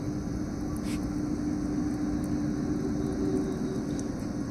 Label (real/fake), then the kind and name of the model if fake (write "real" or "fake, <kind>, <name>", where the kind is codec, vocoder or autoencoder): real